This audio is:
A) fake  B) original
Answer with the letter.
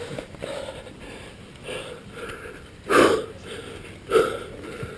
A